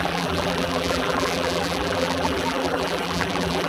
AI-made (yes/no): yes